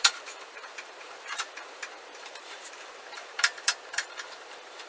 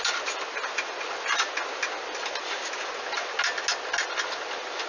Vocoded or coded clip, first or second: first